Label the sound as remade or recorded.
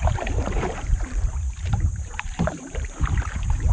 remade